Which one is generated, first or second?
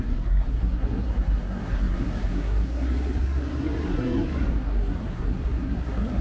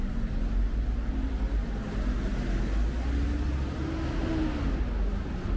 first